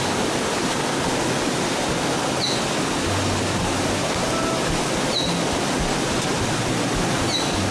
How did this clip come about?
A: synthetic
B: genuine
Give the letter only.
B